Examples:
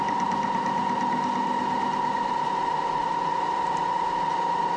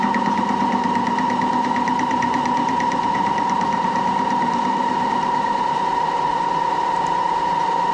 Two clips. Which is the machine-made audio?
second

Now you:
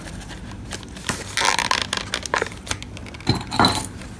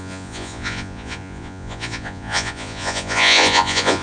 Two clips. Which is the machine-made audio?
second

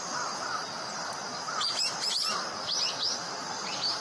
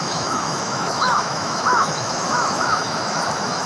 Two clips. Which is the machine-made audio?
second